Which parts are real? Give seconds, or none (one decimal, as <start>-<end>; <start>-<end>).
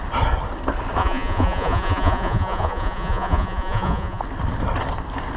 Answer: 0.0-1.0; 4.2-5.4